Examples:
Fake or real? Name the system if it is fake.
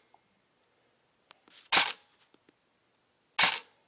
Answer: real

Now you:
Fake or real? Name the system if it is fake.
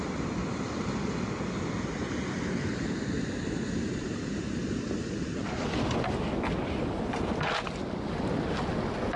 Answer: real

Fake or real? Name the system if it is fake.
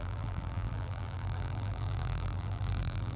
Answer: fake, vocoder, BigVGAN v2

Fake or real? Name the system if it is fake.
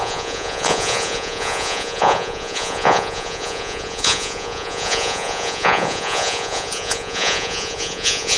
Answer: fake, vocoder, Vocos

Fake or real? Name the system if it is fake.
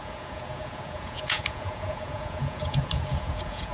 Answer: fake, vocoder, Vocos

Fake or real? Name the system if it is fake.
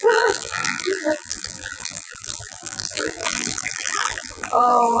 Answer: fake, vocoder, BigVGAN v2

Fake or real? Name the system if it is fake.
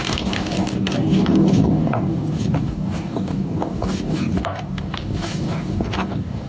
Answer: fake, codec, DAC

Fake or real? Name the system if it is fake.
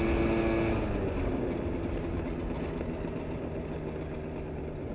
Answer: real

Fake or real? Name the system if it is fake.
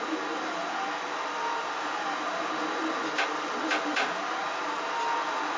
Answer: real